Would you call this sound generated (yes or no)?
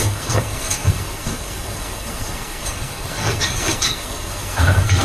yes